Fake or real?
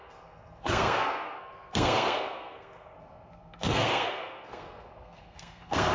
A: fake